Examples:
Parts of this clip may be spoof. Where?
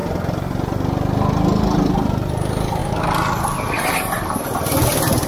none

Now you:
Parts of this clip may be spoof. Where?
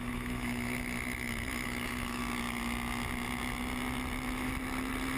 0.0-2.2 (autoencoder, DAC-VAE)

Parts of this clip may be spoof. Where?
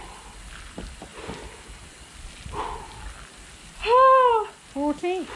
none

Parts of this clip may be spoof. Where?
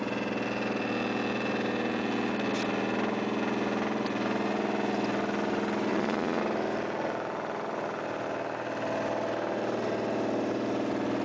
5.9-6.4 (vocoder, Vocos)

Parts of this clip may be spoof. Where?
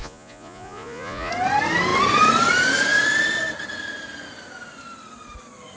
0.0-1.3 (vocoder, Vocos)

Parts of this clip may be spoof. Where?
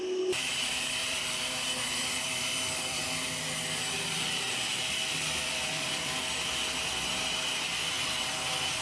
1.0-3.0 (vocoder, BigVGAN v2); 4.7-6.2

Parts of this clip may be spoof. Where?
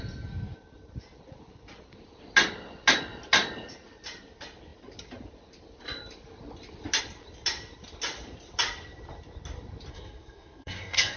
9.9-11.2 (codec, SNAC)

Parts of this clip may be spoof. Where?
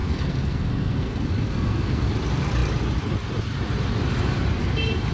0.0-2.1 (codec, SNAC)